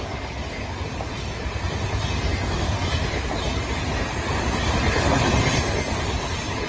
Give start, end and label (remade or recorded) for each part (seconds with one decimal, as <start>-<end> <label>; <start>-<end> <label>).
0.0-6.7 recorded